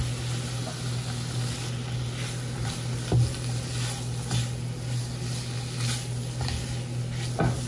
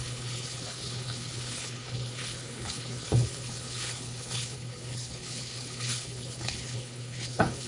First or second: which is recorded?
first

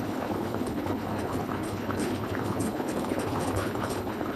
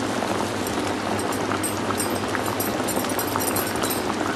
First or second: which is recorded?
second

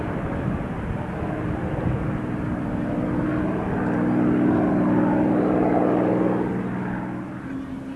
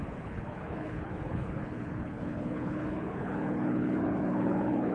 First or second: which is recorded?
first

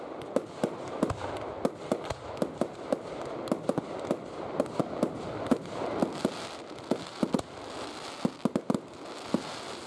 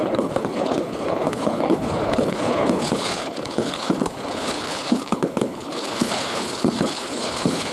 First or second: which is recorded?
first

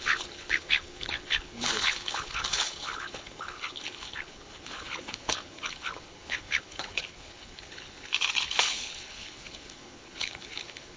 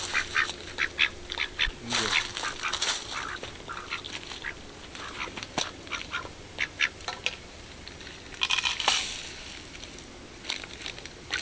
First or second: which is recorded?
second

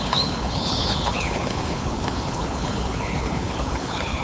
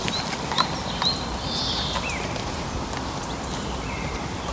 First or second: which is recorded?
second